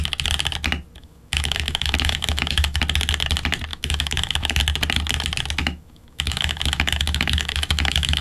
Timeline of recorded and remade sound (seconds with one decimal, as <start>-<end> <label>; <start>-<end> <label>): 0.0-1.0 recorded; 1.0-2.8 remade; 2.8-3.7 recorded; 3.7-4.6 remade; 4.6-5.6 recorded; 5.6-8.2 remade